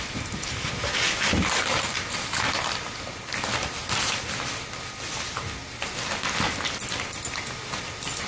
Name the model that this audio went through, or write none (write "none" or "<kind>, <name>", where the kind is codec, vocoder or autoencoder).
none